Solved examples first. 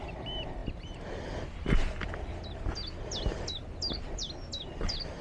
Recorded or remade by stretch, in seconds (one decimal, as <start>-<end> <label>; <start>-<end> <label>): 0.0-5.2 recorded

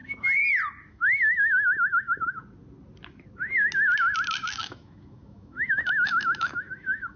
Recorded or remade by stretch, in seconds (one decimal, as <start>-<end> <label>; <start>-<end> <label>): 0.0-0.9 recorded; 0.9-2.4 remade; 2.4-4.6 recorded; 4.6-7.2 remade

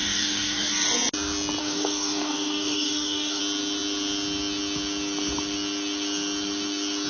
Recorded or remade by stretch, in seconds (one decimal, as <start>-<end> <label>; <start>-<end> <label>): 0.0-0.7 remade; 0.7-1.6 recorded; 1.6-3.4 remade; 3.4-7.1 recorded

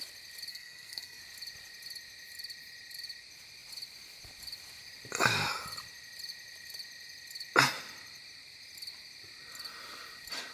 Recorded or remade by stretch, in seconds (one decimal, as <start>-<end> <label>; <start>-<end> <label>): 0.0-0.5 recorded; 0.5-1.2 remade; 1.2-10.5 recorded

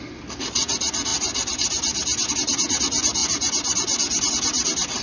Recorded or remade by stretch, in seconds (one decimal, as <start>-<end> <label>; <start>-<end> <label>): 0.0-5.0 recorded

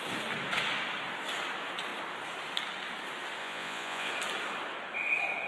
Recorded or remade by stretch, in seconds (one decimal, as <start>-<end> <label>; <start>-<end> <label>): 0.0-3.4 recorded; 3.4-4.1 remade; 4.1-5.5 recorded